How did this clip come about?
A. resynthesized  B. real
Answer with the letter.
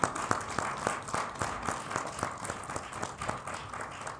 B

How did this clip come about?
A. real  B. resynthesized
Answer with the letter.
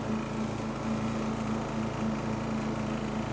A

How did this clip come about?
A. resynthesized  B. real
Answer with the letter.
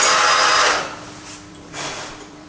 A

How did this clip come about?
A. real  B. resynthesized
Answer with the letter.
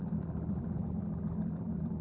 B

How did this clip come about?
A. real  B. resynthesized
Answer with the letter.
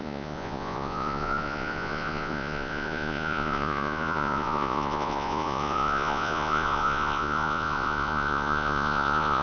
B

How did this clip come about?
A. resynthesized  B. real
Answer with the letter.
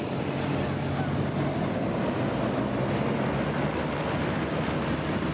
B